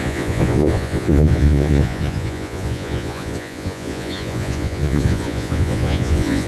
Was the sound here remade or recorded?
remade